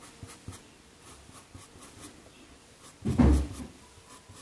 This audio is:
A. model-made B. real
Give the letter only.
B